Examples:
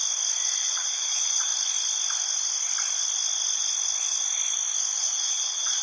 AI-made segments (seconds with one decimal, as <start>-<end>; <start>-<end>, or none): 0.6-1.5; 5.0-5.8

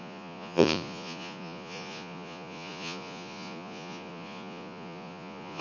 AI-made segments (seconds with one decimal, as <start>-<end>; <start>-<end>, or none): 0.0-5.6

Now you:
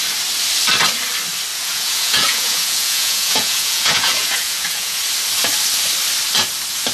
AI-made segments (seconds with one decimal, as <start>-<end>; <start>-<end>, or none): 1.5-5.0